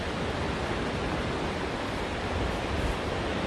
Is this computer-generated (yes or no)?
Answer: no